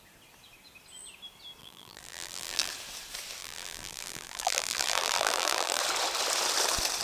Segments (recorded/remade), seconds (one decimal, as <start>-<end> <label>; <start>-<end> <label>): 0.0-1.6 recorded; 1.6-2.7 remade; 2.7-3.4 recorded; 3.4-5.8 remade; 5.8-7.0 recorded